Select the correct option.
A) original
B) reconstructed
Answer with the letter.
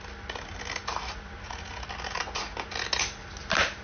A